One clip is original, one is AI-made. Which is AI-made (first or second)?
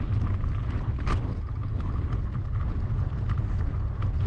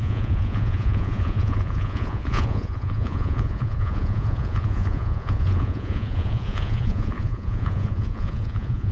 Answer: second